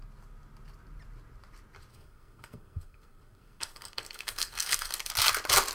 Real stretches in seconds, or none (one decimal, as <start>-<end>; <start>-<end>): 0.0-1.9; 5.1-5.7